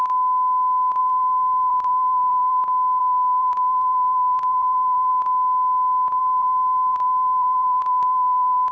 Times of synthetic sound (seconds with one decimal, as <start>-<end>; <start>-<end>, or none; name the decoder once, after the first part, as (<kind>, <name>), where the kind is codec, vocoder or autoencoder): 1.0-2.6 (vocoder, BigVGAN v2); 3.0-5.1; 6.2-8.7